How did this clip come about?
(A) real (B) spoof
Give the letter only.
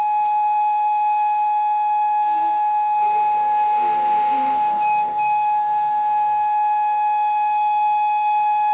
B